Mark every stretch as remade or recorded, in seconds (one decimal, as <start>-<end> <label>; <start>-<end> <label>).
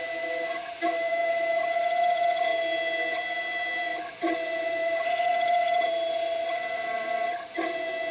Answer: 0.0-2.5 remade; 2.5-3.5 recorded; 3.5-8.1 remade